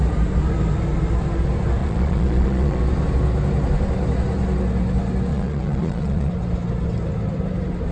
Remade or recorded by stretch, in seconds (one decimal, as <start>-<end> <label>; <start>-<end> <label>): 0.0-1.8 recorded; 1.8-2.8 remade; 2.8-5.3 recorded; 5.3-6.3 remade; 6.3-7.9 recorded